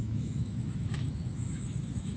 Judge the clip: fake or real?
fake